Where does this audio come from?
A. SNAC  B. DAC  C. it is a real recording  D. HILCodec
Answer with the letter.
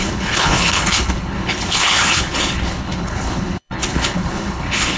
D